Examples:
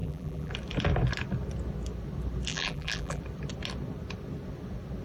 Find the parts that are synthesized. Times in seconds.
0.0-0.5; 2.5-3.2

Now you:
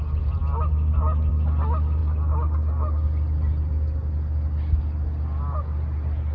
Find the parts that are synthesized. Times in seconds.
none

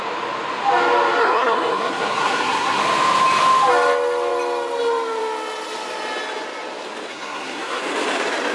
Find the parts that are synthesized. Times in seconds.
1.2-2.8; 7.1-7.8

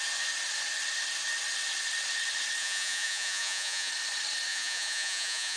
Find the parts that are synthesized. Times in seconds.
2.6-3.9; 4.5-5.6